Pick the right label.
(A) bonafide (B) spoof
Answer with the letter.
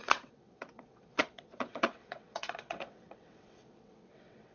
B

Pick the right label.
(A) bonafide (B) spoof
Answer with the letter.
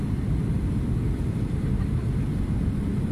A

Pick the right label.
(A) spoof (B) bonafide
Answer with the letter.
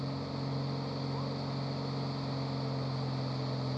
B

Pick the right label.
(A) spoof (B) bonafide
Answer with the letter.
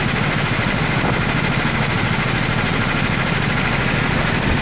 B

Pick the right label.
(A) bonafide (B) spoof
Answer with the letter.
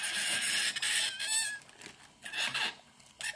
A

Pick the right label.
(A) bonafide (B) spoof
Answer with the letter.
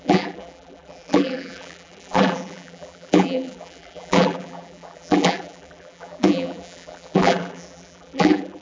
B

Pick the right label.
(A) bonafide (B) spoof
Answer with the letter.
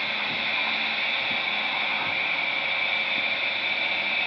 A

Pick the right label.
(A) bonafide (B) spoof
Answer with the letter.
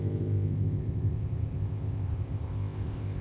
B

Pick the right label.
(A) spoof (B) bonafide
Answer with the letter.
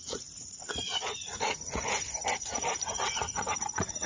A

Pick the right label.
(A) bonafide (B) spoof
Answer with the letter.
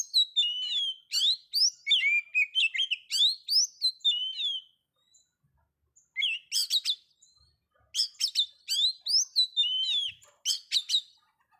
A